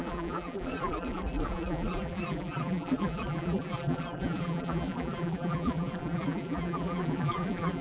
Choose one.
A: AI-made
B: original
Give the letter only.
A